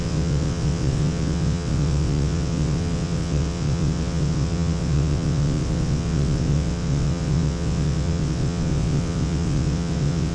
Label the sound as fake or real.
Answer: fake